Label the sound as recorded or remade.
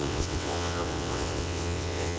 remade